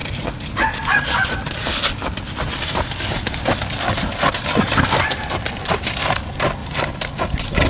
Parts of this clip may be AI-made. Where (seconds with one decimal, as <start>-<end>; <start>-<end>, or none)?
0.0-4.3; 6.6-7.7